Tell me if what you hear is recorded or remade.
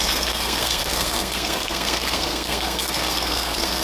remade